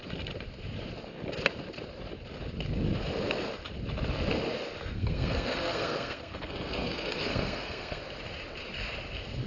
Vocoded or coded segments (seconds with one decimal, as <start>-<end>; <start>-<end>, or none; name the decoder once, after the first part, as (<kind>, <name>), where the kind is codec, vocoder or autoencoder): 4.9-8.0 (codec, SNAC)